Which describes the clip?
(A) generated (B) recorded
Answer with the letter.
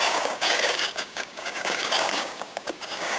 A